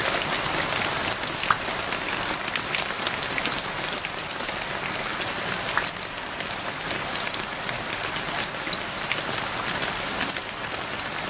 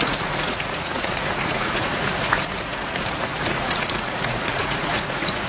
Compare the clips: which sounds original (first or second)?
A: first